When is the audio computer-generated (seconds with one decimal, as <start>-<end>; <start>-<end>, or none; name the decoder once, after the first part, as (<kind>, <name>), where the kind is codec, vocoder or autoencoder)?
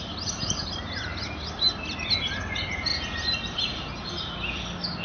none